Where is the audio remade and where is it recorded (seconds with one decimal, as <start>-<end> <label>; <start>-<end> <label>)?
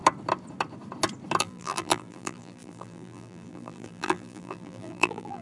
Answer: 0.0-1.4 recorded; 1.4-5.4 remade